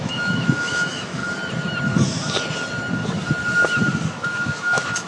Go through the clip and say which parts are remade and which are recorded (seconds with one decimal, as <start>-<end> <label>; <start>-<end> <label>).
0.0-1.2 remade; 1.2-4.1 recorded; 4.1-5.1 remade